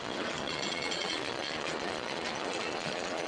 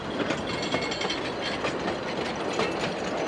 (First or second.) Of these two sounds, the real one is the second